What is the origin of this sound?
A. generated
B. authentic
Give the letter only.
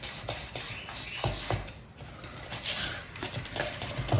B